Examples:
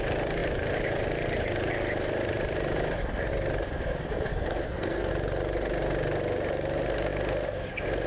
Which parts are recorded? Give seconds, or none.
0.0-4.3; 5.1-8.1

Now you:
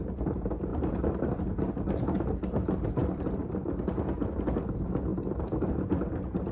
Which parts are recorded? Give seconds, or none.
0.0-0.7; 1.6-5.1; 6.1-6.5

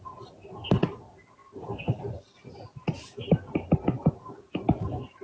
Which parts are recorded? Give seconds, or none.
0.0-5.2

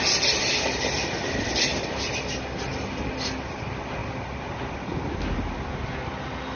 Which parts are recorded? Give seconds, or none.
0.0-6.6

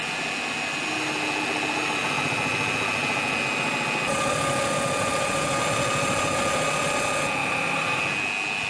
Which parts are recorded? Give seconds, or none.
0.0-7.4; 8.0-8.7

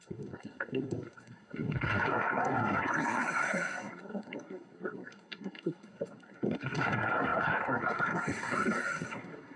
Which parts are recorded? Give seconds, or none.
none